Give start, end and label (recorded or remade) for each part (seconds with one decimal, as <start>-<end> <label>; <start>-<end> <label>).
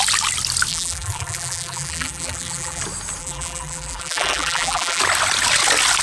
0.0-0.7 recorded; 0.7-2.8 remade; 2.8-3.2 recorded; 3.2-5.0 remade; 5.0-6.0 recorded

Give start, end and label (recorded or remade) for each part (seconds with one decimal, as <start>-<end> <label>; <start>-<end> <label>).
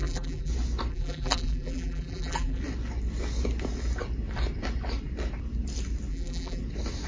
0.0-0.5 remade; 0.5-0.9 recorded; 0.9-2.6 remade; 2.6-6.1 recorded; 6.1-6.6 remade; 6.6-7.1 recorded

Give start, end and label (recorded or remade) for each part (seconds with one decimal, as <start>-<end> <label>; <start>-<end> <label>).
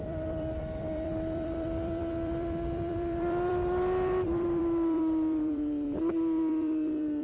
0.0-7.2 remade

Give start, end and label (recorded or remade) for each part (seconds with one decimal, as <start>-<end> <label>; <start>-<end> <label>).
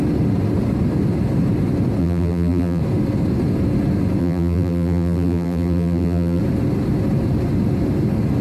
0.0-2.0 recorded; 2.0-2.8 remade; 2.8-4.2 recorded; 4.2-6.4 remade; 6.4-8.4 recorded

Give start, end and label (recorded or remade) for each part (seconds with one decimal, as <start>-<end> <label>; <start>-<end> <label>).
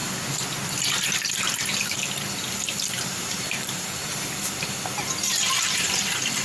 0.0-2.5 recorded; 2.5-4.0 remade; 4.0-5.6 recorded; 5.6-6.4 remade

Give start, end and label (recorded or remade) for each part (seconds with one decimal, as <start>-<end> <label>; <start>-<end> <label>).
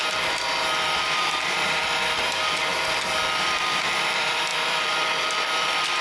0.0-2.7 remade; 2.7-3.3 recorded; 3.3-6.0 remade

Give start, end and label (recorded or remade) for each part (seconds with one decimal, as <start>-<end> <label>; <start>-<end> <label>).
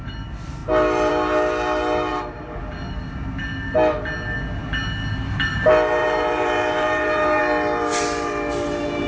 0.0-2.1 recorded; 2.1-2.6 remade; 2.6-6.0 recorded; 6.0-7.4 remade; 7.4-9.1 recorded